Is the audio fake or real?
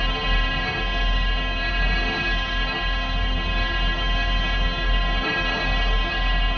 fake